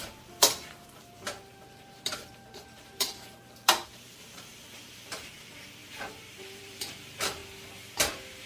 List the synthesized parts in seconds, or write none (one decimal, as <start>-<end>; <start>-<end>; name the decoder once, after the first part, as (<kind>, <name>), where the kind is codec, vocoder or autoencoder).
0.0-7.4 (vocoder, BigVGAN v2); 8.1-8.5